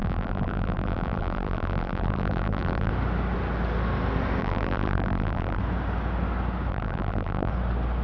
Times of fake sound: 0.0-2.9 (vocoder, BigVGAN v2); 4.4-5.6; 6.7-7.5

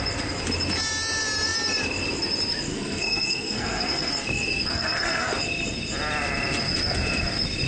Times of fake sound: 2.7-4.1 (codec, SNAC); 4.7-5.3

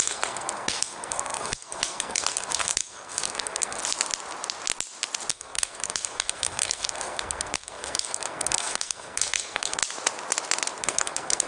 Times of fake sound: 0.0-3.8 (codec, SNAC); 5.3-9.8; 10.8-11.5